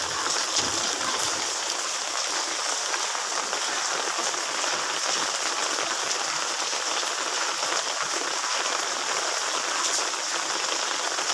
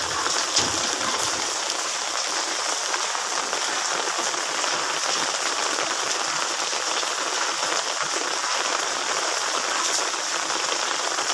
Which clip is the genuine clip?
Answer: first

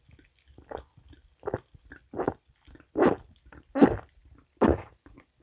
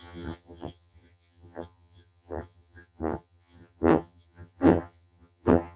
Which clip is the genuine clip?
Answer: first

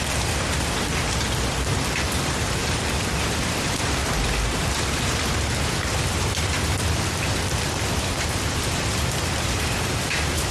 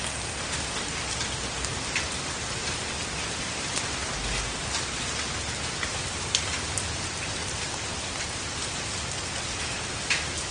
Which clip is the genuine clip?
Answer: second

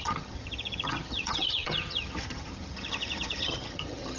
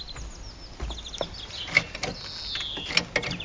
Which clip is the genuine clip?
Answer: second